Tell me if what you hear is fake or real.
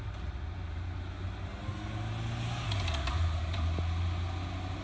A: real